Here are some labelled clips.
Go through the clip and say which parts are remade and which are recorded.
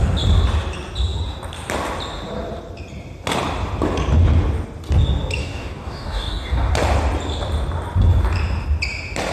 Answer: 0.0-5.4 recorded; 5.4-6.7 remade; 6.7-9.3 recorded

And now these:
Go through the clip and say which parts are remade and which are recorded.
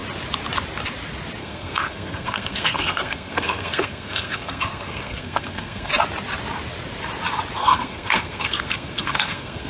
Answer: 0.0-1.4 recorded; 1.4-5.9 remade; 5.9-7.6 recorded; 7.6-9.7 remade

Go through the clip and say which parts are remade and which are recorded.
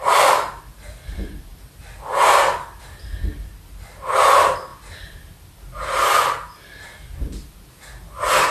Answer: 0.0-8.5 recorded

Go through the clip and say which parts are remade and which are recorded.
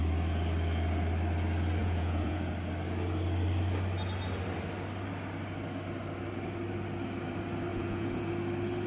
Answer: 0.0-1.8 recorded; 1.8-2.5 remade; 2.5-7.7 recorded; 7.7-8.3 remade; 8.3-8.9 recorded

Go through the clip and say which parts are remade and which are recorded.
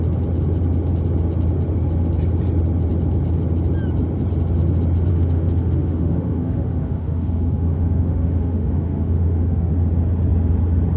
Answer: 0.0-5.1 recorded; 5.1-9.7 remade; 9.7-11.0 recorded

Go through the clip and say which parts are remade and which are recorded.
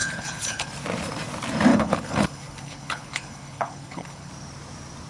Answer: 0.0-0.7 remade; 0.7-1.7 recorded; 1.7-4.3 remade; 4.3-5.1 recorded